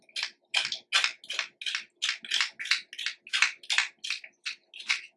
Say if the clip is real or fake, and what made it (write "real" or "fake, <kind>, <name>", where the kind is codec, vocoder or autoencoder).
real